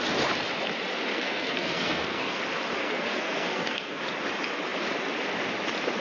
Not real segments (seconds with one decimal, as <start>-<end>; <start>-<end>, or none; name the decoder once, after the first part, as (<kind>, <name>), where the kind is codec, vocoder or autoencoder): 1.1-2.4 (codec, SNAC); 2.8-4.0